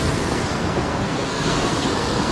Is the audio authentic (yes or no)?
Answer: no